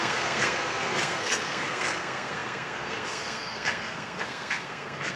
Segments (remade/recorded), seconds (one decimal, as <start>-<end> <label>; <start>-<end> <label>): 0.0-5.2 remade